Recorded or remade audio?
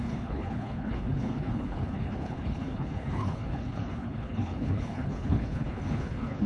remade